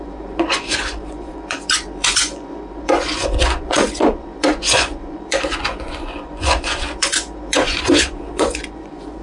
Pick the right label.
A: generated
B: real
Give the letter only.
A